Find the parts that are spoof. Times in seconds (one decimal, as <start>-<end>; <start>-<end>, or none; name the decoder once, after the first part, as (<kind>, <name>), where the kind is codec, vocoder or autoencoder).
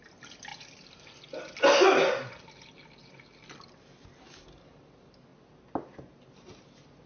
none